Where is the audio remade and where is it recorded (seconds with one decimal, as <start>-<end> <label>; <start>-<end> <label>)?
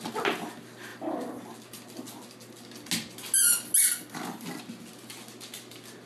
0.0-6.1 recorded